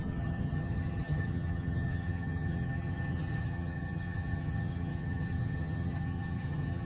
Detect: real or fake fake